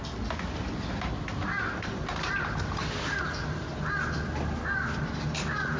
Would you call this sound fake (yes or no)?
no